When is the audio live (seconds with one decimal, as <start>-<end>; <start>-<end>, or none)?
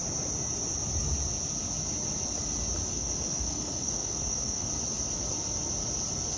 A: 0.0-2.9; 4.7-6.4